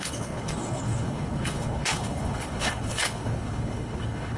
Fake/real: fake